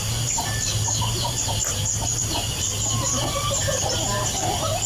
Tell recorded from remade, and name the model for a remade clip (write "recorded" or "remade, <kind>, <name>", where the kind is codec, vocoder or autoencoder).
recorded